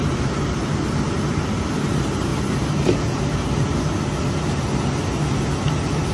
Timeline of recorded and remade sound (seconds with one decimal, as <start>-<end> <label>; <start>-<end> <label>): 0.0-6.1 recorded